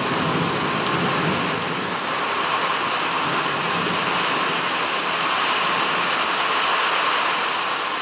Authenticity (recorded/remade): recorded